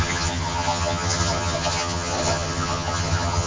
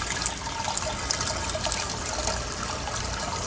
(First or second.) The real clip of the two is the second